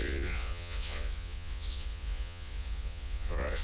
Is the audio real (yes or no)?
no